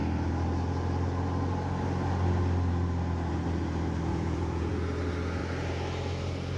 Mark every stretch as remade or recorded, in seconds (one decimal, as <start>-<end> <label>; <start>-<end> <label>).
0.0-4.1 recorded; 4.1-4.7 remade; 4.7-6.6 recorded